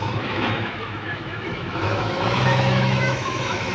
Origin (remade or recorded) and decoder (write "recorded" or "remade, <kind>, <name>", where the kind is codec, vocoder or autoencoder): remade, autoencoder, DAC-VAE